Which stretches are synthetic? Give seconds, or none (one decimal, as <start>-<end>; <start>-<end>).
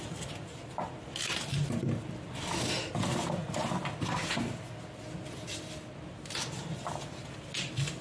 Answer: none